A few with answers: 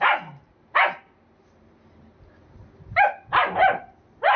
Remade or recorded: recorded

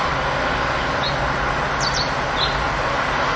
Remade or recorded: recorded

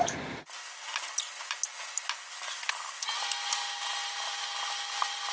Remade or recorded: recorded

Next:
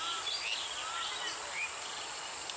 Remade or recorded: recorded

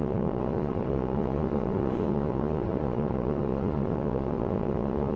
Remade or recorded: remade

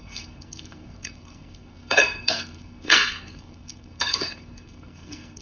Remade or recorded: remade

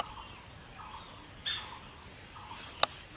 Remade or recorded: recorded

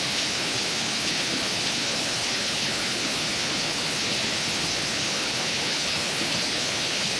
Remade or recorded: remade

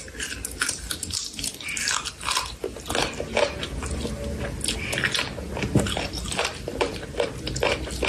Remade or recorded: recorded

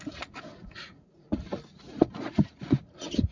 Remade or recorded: remade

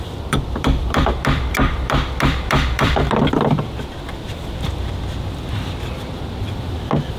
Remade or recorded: remade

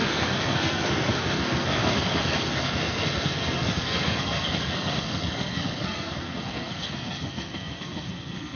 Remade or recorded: remade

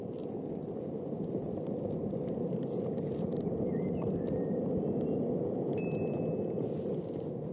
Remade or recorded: recorded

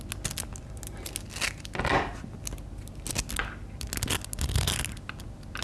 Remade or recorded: recorded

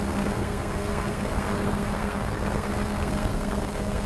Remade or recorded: remade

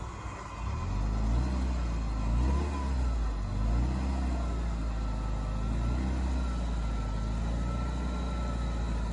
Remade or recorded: recorded